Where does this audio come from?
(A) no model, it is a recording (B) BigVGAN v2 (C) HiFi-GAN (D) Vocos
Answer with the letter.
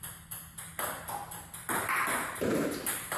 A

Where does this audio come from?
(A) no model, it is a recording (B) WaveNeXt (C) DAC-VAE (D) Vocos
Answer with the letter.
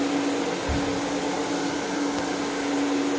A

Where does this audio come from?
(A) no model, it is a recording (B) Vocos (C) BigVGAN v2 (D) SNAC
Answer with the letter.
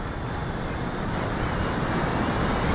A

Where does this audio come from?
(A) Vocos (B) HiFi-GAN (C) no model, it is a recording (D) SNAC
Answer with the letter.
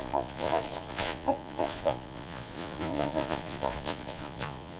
A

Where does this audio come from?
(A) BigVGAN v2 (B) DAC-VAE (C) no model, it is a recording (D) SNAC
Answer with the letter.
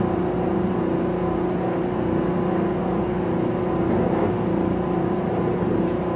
C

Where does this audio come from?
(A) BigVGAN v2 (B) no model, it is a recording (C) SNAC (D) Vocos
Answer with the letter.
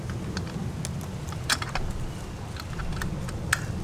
B